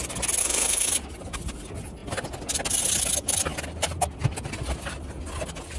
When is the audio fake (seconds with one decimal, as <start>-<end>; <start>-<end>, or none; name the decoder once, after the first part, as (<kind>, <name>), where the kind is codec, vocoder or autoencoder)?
0.4-0.9 (autoencoder, DAC-VAE)